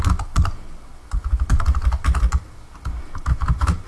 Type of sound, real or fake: real